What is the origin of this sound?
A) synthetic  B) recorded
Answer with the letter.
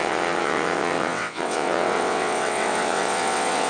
A